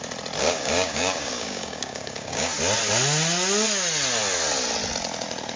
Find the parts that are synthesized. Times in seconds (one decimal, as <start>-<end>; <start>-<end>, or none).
0.4-2.5

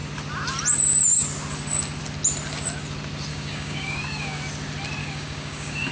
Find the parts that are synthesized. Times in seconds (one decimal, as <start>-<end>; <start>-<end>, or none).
3.3-4.4; 5.0-5.9